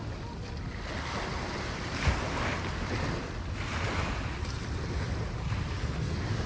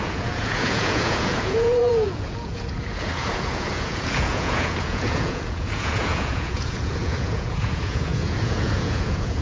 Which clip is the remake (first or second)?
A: second